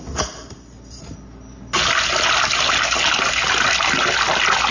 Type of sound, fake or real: real